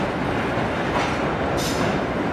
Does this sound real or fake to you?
real